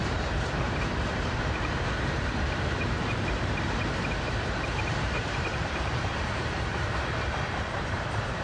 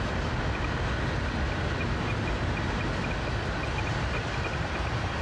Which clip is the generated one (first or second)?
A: first